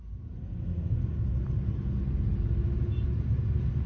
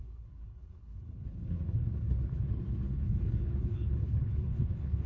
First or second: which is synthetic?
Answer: second